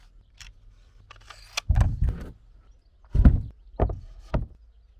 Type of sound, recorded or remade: recorded